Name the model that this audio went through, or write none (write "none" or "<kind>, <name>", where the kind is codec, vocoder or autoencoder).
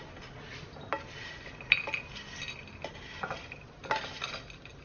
none